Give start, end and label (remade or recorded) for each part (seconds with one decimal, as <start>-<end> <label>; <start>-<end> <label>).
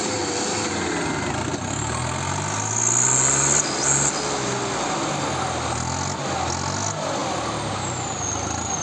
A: 0.0-8.8 recorded